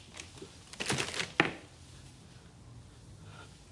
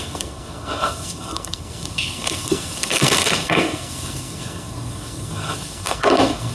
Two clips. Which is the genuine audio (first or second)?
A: first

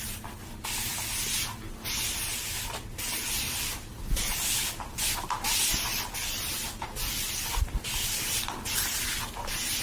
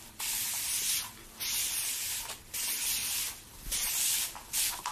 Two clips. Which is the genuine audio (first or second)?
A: first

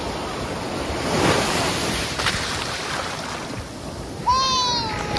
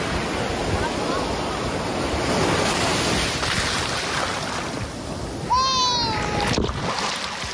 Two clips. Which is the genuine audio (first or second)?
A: second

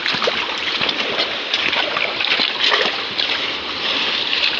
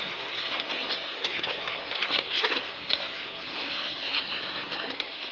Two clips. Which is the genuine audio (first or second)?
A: first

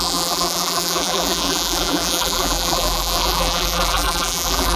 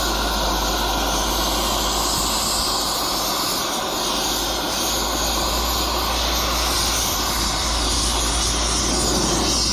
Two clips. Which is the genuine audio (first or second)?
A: second